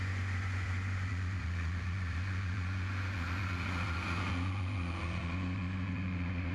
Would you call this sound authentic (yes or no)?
no